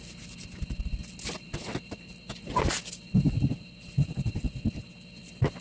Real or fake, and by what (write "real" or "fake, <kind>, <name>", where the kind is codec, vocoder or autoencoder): real